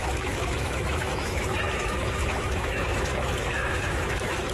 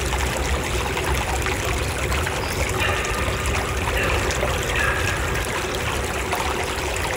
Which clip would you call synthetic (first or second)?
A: first